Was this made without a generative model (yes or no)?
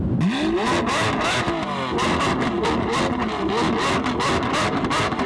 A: yes